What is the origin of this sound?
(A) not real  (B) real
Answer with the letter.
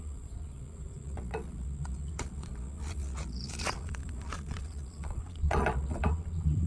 A